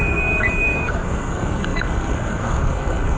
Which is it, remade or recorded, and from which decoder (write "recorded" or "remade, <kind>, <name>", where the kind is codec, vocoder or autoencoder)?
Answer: remade, codec, SNAC